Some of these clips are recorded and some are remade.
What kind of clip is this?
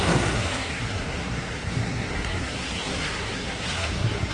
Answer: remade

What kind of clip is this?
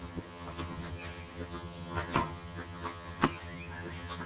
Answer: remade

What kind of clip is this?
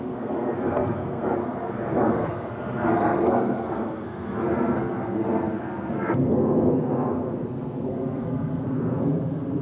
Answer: remade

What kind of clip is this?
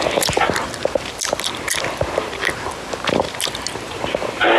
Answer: recorded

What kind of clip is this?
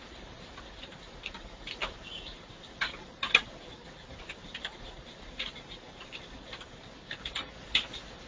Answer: remade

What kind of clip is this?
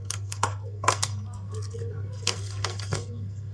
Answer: remade